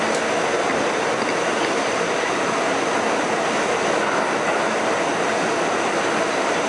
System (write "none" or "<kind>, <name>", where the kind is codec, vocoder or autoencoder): none